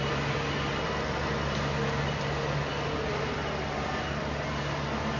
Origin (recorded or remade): recorded